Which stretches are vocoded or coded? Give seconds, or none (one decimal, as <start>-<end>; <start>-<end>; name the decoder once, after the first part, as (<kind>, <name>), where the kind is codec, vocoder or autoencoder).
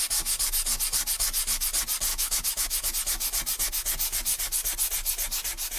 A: 2.1-2.9 (autoencoder, DAC-VAE)